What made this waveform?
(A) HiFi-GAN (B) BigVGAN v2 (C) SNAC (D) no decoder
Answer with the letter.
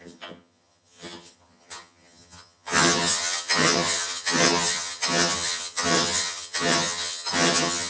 A